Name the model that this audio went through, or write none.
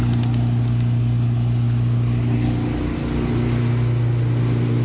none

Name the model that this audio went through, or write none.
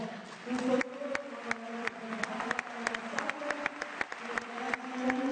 none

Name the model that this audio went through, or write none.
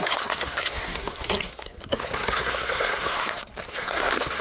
codec, SNAC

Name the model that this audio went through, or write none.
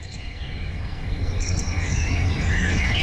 codec, SNAC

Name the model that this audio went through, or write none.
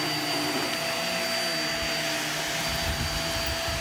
none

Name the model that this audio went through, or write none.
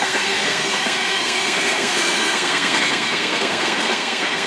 codec, SNAC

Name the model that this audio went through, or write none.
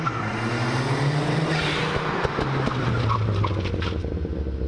none